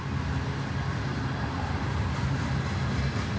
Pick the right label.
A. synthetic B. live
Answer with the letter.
B